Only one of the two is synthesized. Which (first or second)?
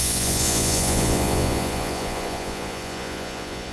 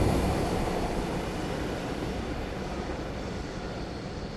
first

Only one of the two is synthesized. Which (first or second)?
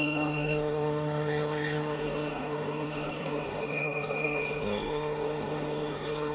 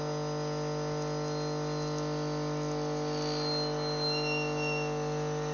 first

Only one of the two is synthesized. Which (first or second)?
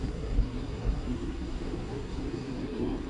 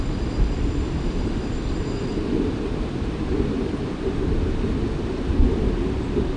first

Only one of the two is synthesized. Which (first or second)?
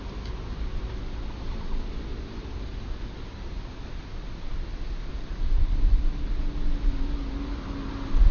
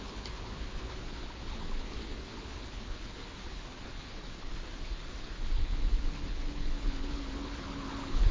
second